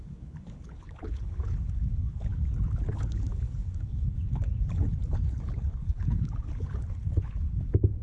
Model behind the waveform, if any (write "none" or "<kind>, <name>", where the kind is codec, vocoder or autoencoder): codec, HILCodec